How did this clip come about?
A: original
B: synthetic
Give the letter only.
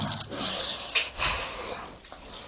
A